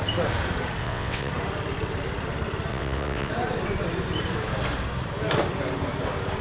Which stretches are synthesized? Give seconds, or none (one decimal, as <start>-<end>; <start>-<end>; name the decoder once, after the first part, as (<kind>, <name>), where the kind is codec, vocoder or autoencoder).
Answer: 0.8-1.3 (vocoder, WaveNeXt); 2.7-3.3